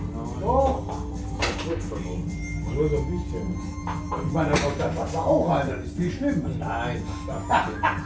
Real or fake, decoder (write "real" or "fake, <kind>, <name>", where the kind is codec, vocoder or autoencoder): real